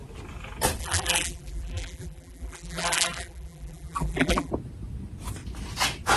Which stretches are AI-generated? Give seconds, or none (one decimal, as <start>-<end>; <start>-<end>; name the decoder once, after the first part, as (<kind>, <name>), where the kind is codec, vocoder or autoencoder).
0.8-4.5 (vocoder, BigVGAN v2)